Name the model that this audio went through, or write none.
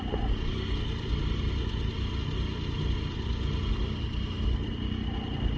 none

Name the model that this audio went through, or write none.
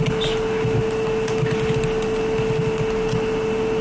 none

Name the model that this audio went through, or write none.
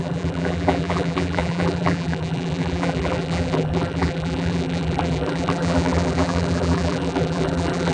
vocoder, BigVGAN v2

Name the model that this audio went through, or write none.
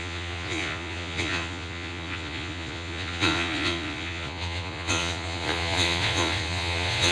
vocoder, Vocos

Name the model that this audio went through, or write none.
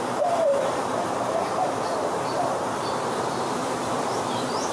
vocoder, BigVGAN v2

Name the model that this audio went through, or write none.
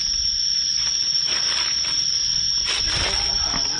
none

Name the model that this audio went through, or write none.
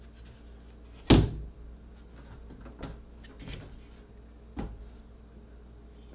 none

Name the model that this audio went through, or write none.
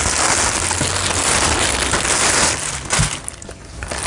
none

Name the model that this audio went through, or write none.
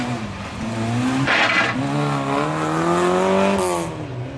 none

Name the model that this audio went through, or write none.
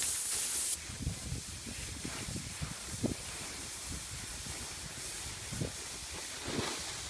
none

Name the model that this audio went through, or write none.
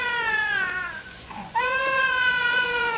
vocoder, Vocos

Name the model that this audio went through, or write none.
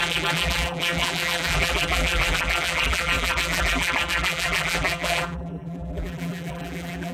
vocoder, BigVGAN v2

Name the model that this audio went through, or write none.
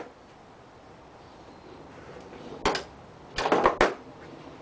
none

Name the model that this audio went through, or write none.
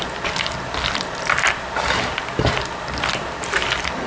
none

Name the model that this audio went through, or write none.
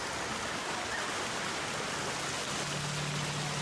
none